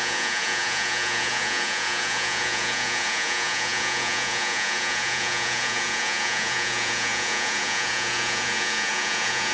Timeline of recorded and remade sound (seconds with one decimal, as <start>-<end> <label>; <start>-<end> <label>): 0.0-9.5 remade